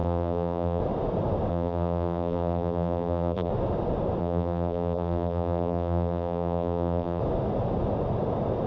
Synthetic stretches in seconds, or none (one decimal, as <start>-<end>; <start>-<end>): 0.0-0.8; 1.5-3.5; 4.2-7.2